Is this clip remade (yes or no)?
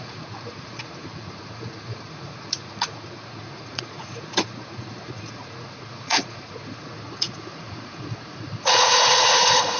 yes